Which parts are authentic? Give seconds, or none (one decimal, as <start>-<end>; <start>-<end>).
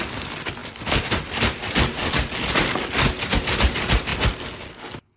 0.0-0.6; 1.4-2.0; 2.7-5.2